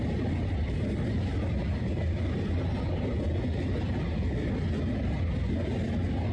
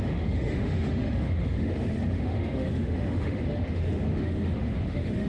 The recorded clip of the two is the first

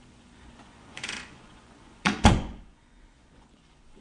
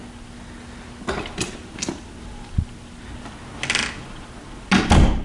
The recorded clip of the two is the second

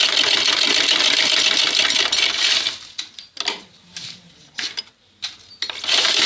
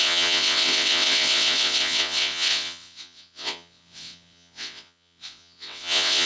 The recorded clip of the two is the first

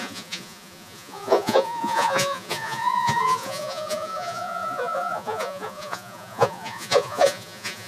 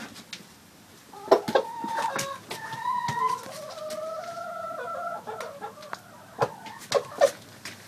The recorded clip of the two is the second